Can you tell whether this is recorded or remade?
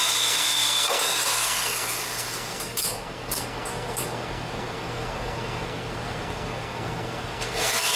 remade